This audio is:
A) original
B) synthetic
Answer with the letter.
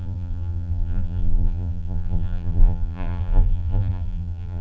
B